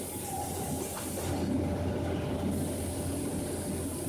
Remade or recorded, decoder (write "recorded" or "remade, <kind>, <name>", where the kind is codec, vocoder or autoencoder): recorded